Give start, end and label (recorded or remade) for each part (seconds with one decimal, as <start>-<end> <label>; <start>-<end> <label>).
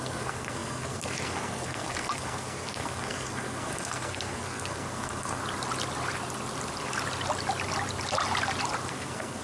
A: 0.0-5.4 remade; 5.4-8.9 recorded; 8.9-9.4 remade